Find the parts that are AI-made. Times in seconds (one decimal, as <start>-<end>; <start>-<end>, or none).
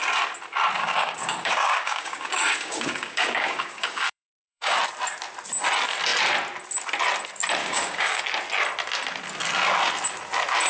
0.8-4.8; 7.6-8.2